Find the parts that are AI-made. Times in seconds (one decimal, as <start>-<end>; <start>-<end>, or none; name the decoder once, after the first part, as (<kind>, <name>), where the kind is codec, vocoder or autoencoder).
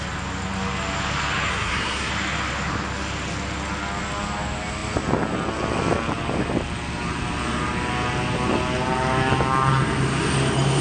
1.5-2.1 (codec, SNAC)